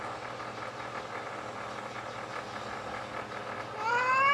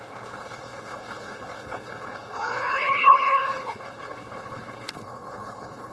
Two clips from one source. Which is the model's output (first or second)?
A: second